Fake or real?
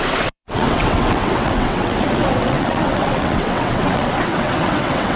fake